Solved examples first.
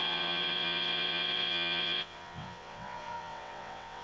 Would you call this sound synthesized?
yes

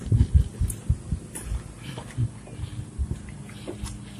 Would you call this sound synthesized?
no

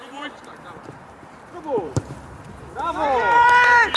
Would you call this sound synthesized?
yes